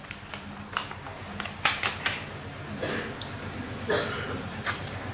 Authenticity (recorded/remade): recorded